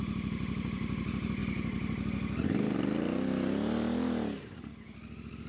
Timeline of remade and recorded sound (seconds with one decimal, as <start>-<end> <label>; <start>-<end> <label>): 0.0-5.5 recorded